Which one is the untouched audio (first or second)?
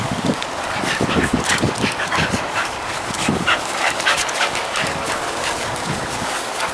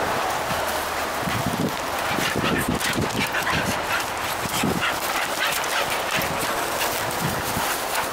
second